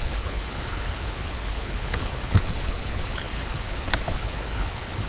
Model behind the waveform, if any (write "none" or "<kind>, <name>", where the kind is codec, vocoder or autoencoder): codec, HILCodec